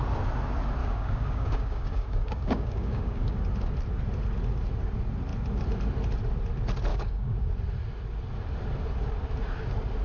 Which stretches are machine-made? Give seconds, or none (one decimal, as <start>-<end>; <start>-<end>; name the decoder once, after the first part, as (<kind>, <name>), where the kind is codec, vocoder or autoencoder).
0.8-3.4 (codec, DAC); 6.9-7.5